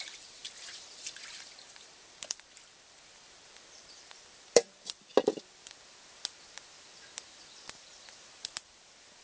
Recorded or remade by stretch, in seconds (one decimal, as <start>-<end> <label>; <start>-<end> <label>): 0.0-5.1 remade; 5.1-9.2 recorded